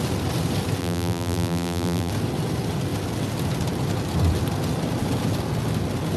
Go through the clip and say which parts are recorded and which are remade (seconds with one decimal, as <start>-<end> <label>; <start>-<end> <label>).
0.0-0.8 recorded; 0.8-2.1 remade; 2.1-6.2 recorded